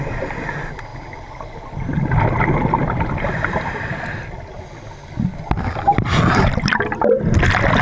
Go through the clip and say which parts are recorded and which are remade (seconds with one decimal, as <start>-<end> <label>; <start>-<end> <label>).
0.0-7.8 recorded